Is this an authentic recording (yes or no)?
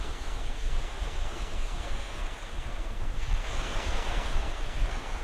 no